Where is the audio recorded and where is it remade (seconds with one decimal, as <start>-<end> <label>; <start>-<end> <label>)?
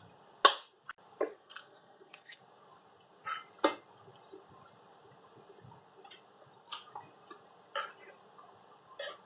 0.0-1.3 recorded; 1.3-2.4 remade; 2.4-9.3 recorded